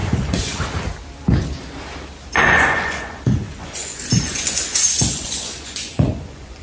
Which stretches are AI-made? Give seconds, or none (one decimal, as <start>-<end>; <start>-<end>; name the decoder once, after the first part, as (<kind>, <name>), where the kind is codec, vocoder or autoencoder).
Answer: 0.0-0.6 (vocoder, Vocos); 2.4-6.6